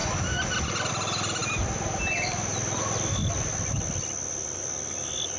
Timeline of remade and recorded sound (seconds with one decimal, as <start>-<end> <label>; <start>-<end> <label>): 0.0-5.4 recorded